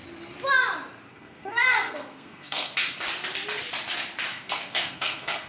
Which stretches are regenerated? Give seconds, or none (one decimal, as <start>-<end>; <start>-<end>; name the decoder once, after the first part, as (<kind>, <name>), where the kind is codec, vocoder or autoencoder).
1.1-2.7 (codec, SNAC); 4.3-5.5